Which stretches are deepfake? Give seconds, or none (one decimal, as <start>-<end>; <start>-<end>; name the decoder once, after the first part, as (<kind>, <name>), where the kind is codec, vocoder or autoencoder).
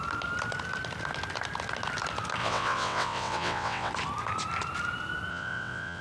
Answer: 2.4-3.9 (vocoder, WaveNeXt); 5.3-6.0